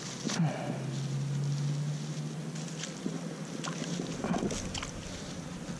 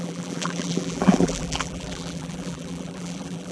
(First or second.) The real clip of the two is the first